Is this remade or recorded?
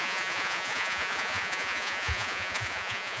remade